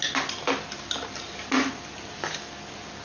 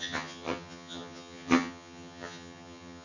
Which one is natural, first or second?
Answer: first